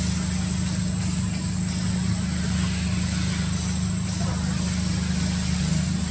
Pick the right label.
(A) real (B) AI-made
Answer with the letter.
A